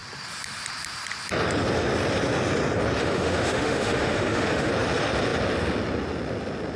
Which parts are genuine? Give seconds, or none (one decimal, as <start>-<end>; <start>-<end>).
0.0-3.0; 4.7-6.8